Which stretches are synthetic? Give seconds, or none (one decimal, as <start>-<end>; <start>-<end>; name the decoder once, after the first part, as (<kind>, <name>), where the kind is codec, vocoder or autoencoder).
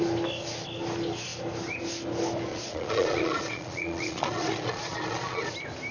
2.5-5.5 (vocoder, Vocos)